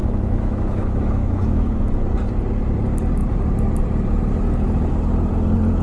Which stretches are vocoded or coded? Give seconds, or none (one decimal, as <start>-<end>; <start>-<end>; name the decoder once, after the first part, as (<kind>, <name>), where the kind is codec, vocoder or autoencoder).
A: 0.0-1.8 (autoencoder, DAC-VAE)